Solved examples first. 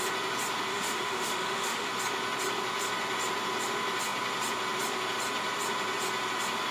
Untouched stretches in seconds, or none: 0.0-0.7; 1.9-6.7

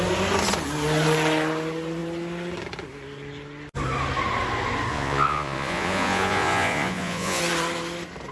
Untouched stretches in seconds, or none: 0.0-4.9; 7.4-8.3

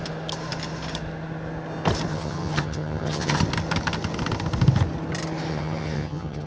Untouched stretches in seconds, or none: 0.0-2.1; 3.4-5.5